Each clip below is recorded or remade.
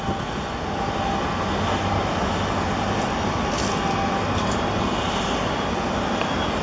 recorded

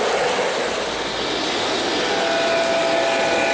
recorded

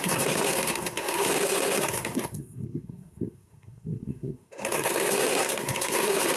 remade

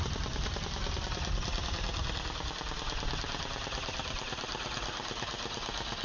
recorded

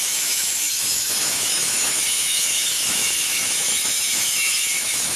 remade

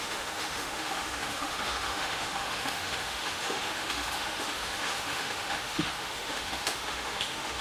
remade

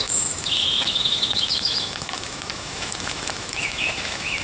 remade